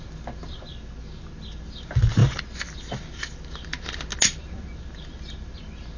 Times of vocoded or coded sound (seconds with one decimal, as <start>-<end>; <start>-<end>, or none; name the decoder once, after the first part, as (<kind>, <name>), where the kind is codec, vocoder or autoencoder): none